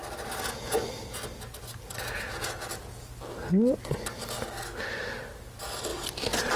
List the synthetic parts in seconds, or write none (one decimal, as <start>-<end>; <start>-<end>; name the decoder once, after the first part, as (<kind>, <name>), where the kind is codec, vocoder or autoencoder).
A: none